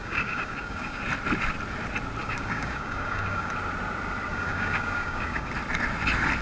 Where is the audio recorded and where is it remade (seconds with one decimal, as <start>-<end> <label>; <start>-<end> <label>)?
0.0-1.0 remade; 1.0-2.2 recorded; 2.2-3.5 remade; 3.5-4.3 recorded; 4.3-5.5 remade; 5.5-6.4 recorded